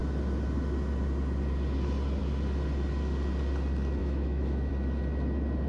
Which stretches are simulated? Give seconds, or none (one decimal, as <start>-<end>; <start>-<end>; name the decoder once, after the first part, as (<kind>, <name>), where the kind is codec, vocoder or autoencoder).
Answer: 4.0-4.7 (autoencoder, DAC-VAE)